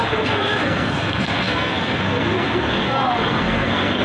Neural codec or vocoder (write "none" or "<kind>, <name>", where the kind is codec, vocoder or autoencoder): codec, SNAC